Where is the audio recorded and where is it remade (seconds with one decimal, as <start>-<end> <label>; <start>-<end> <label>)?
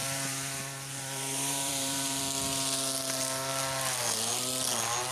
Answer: 0.0-2.2 remade; 2.2-5.1 recorded